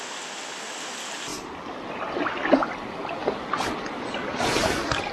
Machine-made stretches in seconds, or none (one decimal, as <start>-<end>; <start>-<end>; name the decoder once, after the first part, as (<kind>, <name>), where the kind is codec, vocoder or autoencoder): none